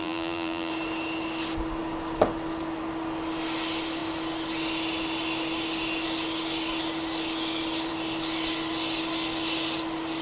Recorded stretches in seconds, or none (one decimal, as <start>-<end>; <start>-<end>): 0.7-10.2

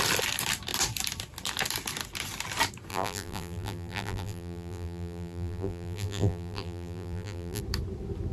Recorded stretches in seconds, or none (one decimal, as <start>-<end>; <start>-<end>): 0.0-2.9; 7.6-8.3

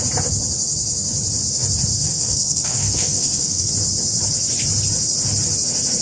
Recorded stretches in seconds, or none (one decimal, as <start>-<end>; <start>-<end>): 0.0-1.9; 3.7-6.0